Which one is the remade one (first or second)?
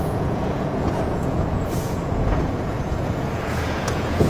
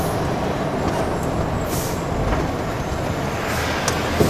first